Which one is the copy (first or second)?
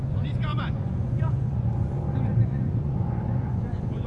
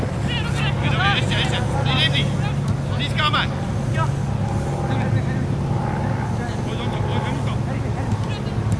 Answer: first